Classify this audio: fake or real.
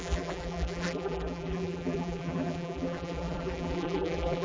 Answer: fake